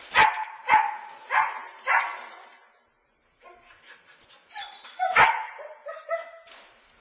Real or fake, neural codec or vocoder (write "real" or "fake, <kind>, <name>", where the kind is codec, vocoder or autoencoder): real